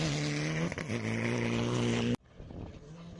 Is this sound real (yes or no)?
yes